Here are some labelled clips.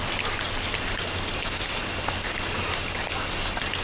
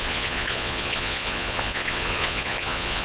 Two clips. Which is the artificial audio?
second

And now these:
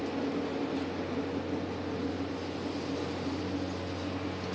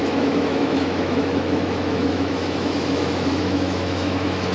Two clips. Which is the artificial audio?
second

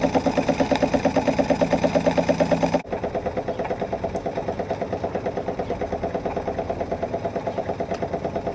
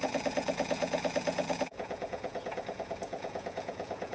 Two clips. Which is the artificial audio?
second